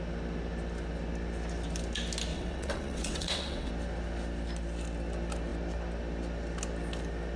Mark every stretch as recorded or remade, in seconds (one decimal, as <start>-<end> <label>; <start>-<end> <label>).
0.0-2.3 recorded; 2.3-3.7 remade; 3.7-7.4 recorded